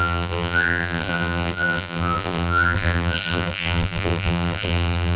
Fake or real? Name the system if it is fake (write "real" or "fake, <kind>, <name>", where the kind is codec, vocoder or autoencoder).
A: fake, vocoder, BigVGAN v2